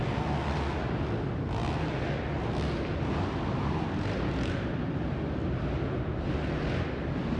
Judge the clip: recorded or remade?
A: recorded